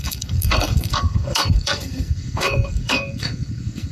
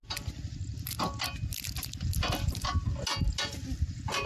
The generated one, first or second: first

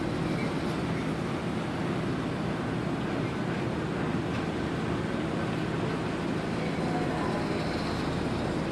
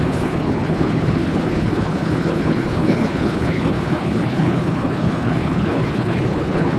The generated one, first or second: second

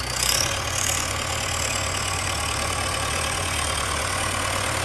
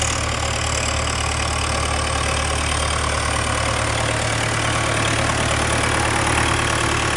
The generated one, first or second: first